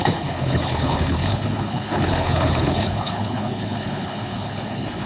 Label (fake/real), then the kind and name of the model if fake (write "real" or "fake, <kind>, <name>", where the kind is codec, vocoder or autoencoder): fake, codec, HILCodec